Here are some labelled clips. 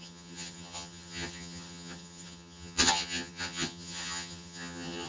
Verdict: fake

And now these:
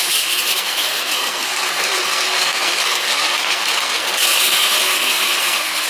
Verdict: fake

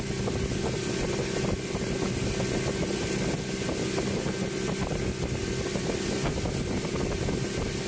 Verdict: real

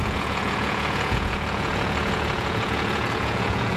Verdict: fake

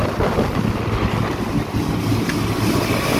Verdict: real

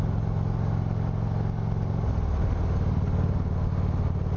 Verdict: real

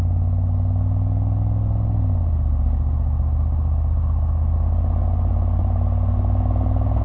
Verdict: real